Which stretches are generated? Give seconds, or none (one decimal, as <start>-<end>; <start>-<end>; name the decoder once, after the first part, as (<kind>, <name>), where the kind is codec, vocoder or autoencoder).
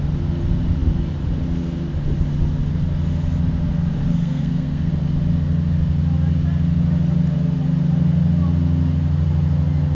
4.0-4.9 (codec, SNAC)